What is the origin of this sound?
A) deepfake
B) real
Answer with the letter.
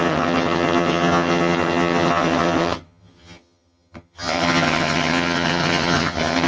A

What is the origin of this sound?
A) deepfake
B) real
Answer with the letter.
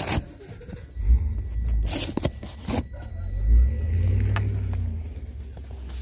B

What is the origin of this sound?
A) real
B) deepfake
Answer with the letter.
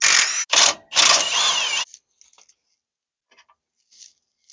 A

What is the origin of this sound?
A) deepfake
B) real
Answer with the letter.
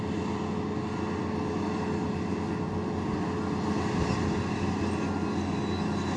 B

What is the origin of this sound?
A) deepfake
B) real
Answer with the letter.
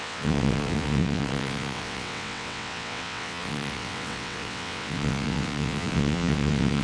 A